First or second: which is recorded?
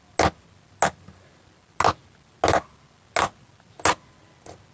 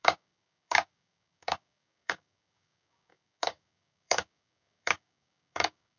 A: first